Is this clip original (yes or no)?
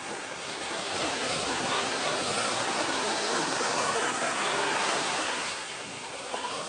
no